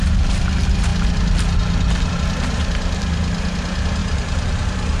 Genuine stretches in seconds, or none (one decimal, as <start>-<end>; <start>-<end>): 0.0-4.0